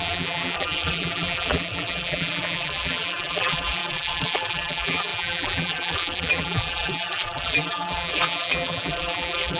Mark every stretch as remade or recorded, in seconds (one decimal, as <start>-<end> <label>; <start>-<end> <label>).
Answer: 0.0-9.6 remade